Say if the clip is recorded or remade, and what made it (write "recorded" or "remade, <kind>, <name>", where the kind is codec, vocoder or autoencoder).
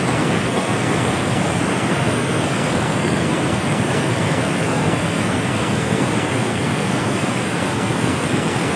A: remade, codec, SNAC